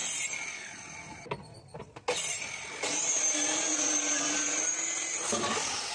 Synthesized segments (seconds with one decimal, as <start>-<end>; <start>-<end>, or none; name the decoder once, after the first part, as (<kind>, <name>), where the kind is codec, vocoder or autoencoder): none